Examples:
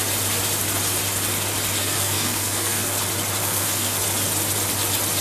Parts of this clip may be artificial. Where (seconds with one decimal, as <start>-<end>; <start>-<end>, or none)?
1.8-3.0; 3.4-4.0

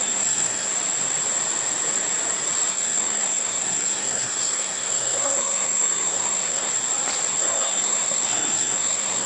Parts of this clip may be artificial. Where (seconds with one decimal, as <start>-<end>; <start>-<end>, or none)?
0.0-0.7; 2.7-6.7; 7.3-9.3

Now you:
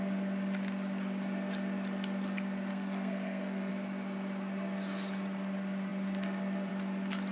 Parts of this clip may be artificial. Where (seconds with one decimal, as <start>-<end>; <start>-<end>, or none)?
2.7-3.7